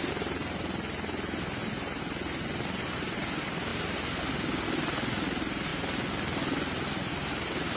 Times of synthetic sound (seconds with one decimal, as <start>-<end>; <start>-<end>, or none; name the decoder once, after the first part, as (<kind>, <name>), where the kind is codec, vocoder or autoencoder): none